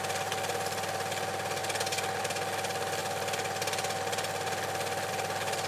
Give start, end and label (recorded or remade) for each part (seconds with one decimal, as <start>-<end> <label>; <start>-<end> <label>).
0.0-5.7 recorded